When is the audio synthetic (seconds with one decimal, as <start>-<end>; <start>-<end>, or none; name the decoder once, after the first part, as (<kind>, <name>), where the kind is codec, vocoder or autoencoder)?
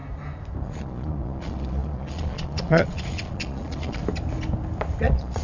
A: 0.6-4.0 (vocoder, Vocos); 5.0-5.4